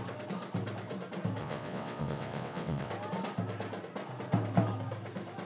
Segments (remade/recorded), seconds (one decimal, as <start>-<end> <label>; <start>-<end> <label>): 0.0-1.4 recorded; 1.4-2.9 remade; 2.9-5.5 recorded